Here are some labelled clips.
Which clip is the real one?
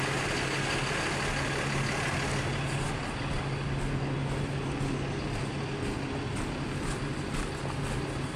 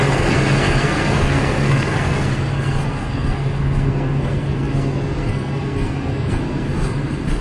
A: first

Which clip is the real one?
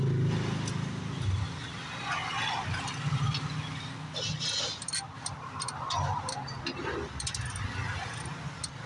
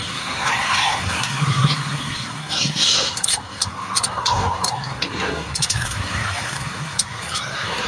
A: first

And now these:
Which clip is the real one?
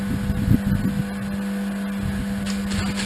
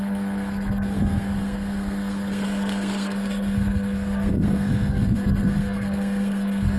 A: first